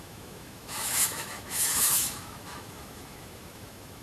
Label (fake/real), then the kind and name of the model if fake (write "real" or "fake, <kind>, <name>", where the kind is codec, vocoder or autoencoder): fake, autoencoder, DAC-VAE